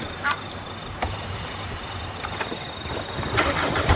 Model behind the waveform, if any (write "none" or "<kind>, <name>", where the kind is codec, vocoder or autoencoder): vocoder, BigVGAN v2